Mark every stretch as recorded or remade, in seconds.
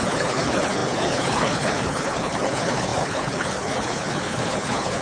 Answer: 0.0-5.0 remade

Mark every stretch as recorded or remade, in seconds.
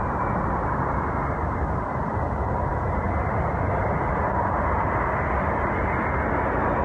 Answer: 0.0-6.8 recorded